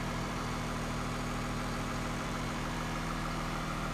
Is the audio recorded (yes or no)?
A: no